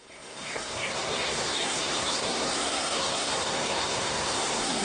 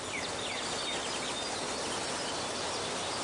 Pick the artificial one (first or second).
first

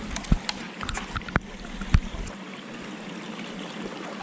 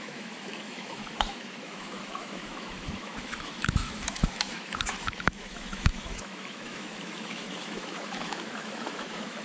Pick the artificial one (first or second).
second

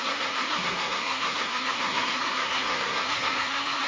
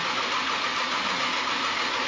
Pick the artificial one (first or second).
first